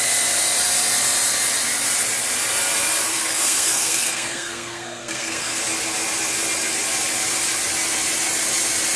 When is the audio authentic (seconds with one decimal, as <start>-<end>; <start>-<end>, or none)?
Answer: 0.0-3.1; 5.6-9.0